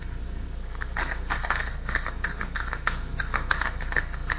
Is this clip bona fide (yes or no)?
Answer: no